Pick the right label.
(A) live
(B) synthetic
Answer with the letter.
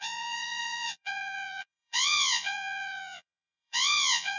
B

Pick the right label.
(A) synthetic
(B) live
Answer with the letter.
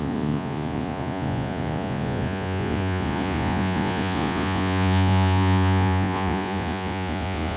A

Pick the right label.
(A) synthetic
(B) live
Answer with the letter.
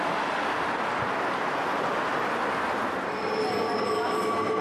B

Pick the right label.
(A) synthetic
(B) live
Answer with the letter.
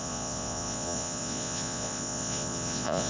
A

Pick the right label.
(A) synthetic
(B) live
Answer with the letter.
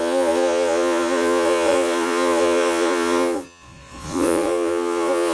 A